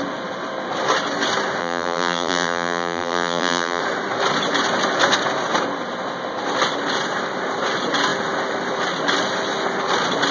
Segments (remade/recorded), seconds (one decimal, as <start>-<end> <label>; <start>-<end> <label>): 0.0-1.6 recorded; 1.6-3.8 remade; 3.8-10.3 recorded